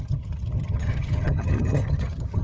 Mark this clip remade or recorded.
remade